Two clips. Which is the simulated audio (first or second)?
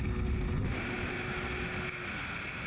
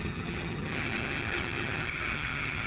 second